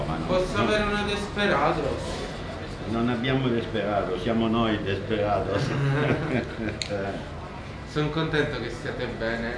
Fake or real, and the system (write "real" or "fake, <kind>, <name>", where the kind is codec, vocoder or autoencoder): real